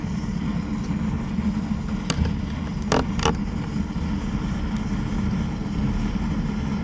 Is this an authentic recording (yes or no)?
yes